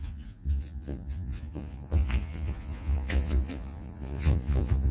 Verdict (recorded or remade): remade